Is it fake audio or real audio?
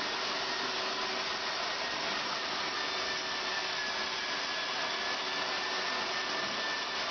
real